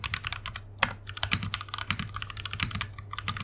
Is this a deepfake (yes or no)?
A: no